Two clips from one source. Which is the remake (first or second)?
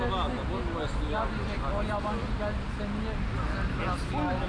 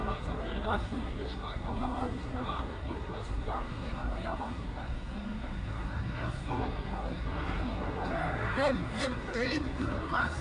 second